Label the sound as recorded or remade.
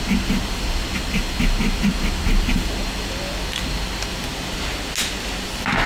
recorded